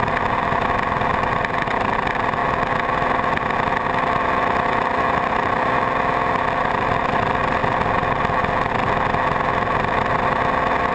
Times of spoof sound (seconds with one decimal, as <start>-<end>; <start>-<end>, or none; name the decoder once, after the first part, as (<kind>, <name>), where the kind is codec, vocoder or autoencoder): none